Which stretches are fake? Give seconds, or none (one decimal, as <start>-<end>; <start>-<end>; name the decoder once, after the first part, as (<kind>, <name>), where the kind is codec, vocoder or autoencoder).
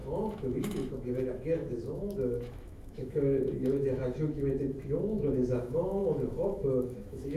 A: 0.0-7.4 (autoencoder, DAC-VAE)